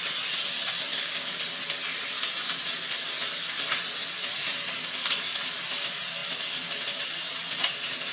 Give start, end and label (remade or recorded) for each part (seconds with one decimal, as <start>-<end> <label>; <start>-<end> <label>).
0.0-0.9 recorded; 0.9-1.4 remade; 1.4-8.1 recorded